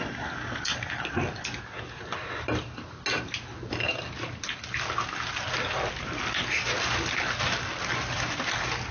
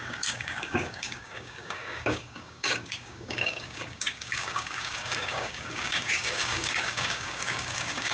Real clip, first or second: first